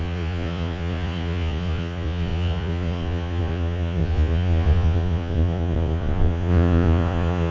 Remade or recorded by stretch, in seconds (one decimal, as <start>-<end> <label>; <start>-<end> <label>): 0.0-7.5 remade